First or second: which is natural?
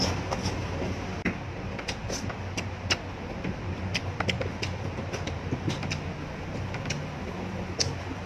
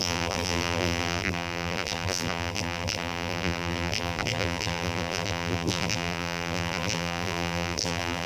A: first